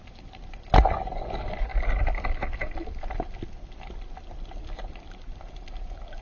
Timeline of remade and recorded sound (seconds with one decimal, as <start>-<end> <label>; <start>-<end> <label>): 0.0-6.2 recorded